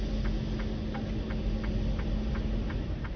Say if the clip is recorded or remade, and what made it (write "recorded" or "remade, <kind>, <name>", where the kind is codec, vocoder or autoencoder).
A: recorded